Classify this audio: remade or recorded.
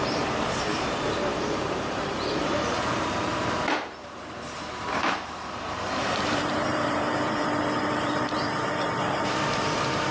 remade